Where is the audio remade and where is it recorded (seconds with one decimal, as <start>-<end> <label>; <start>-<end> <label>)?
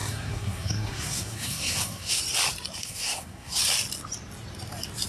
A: 0.0-2.2 remade; 2.2-2.8 recorded; 2.8-3.6 remade; 3.6-5.1 recorded